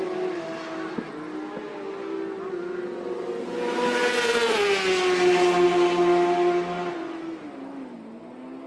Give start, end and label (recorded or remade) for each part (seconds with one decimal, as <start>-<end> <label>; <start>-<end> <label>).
0.0-8.7 recorded